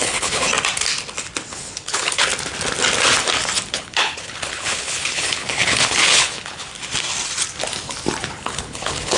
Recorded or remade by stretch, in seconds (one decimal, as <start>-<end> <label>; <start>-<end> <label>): 0.0-0.5 remade; 0.5-1.5 recorded; 1.5-2.3 remade; 2.3-3.7 recorded; 3.7-6.7 remade; 6.7-8.3 recorded; 8.3-9.2 remade